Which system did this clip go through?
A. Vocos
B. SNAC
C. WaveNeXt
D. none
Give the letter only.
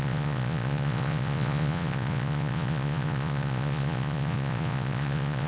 A